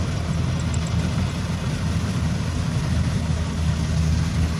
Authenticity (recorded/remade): recorded